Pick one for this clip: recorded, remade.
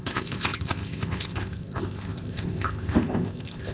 remade